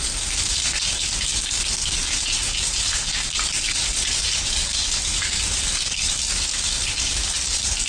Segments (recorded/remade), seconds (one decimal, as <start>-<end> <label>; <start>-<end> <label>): 0.0-7.9 remade